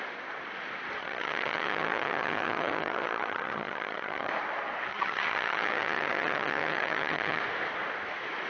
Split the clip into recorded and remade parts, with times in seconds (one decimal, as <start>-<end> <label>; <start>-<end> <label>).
0.0-1.0 recorded; 1.0-4.3 remade; 4.3-4.9 recorded; 4.9-7.4 remade; 7.4-8.5 recorded